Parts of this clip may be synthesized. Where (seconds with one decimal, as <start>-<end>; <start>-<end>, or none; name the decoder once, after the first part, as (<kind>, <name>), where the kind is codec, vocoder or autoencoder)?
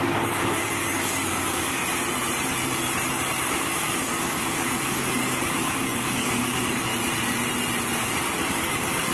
0.0-1.8 (codec, DAC); 3.4-6.9; 8.5-9.1